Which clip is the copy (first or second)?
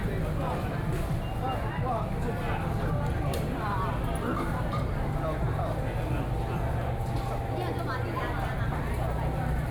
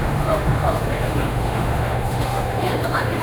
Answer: second